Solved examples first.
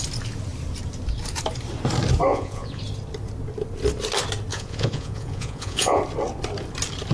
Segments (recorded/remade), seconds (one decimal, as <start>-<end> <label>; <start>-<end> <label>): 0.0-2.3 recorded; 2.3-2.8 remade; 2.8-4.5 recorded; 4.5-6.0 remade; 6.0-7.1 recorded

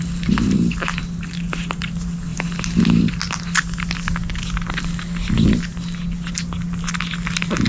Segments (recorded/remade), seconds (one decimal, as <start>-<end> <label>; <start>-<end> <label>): 0.0-7.7 recorded

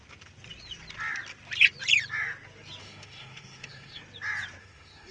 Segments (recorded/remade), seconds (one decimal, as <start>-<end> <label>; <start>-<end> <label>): 0.0-2.8 recorded; 2.8-4.0 remade; 4.0-4.6 recorded; 4.6-5.1 remade

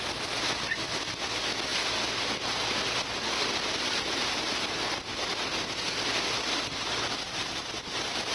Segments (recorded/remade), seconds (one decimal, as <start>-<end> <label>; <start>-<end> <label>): 0.0-8.3 recorded

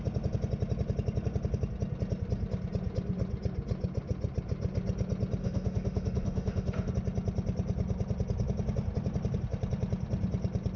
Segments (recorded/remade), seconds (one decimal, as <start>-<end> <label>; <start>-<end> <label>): 0.0-5.4 recorded; 5.4-6.9 remade; 6.9-10.8 recorded

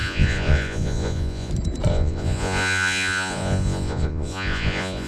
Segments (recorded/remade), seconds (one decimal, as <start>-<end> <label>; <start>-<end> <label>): 0.0-1.5 remade; 1.5-1.9 recorded; 1.9-5.1 remade

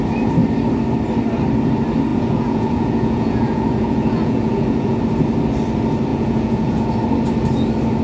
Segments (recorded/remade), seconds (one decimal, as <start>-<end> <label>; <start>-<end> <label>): 0.0-2.1 recorded; 2.1-5.0 remade; 5.0-6.1 recorded; 6.1-6.8 remade; 6.8-8.0 recorded